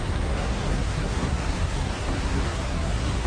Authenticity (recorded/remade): remade